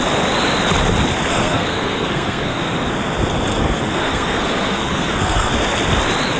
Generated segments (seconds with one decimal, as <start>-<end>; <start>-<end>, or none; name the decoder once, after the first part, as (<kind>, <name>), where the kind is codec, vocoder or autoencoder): 1.3-2.6 (codec, SNAC); 3.5-5.5